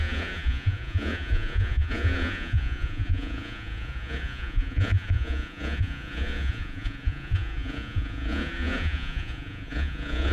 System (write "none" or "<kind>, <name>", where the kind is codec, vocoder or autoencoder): vocoder, Vocos